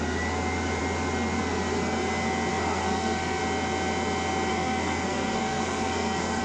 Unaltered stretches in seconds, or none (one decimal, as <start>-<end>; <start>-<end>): 0.0-2.5; 3.4-4.5